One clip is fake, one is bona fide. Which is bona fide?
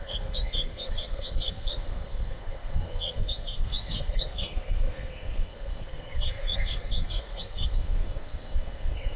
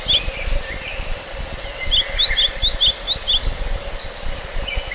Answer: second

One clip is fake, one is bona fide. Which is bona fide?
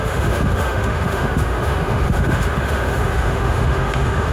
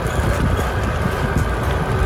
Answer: second